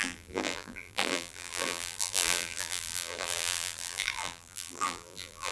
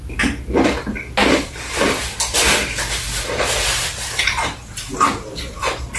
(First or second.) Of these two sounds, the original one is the second